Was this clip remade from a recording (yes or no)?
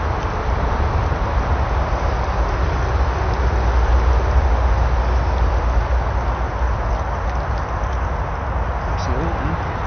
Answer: no